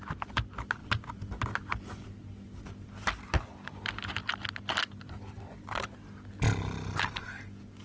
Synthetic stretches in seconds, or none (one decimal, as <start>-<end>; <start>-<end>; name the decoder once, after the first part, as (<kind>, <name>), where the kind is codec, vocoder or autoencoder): none